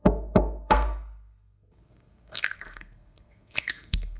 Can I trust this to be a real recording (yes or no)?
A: no